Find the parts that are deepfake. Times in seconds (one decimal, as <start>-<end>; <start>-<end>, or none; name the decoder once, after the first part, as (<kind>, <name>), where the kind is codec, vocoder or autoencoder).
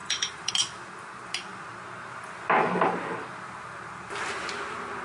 0.0-0.5 (vocoder, BigVGAN v2)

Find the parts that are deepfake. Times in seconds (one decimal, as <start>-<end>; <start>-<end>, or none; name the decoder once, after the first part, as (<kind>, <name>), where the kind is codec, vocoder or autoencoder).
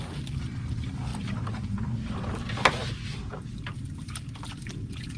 none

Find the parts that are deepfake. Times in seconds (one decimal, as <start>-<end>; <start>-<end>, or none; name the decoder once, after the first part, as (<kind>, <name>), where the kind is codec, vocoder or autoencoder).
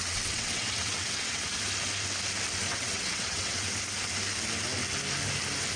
0.0-1.6 (vocoder, WaveNeXt); 2.7-3.7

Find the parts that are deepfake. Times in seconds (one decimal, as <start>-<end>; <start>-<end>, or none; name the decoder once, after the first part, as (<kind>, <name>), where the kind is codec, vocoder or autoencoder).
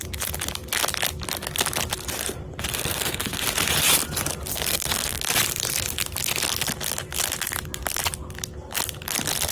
2.8-3.4 (codec, SNAC); 4.5-5.2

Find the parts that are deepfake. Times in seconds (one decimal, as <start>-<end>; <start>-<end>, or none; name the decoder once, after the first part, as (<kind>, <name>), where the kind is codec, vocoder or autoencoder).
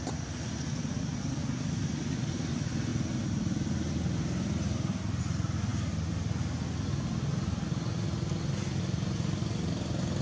none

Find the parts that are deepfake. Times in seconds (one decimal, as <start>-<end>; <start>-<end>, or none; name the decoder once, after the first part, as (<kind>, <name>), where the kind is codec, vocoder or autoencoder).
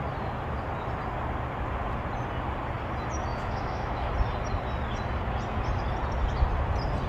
3.3-4.1 (autoencoder, DAC-VAE)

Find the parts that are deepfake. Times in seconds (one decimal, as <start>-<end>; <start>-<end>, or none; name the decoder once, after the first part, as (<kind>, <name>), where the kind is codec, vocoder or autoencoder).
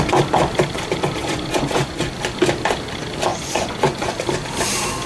1.2-2.1 (vocoder, Vocos); 3.3-4.1